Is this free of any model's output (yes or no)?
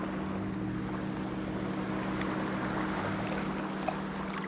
yes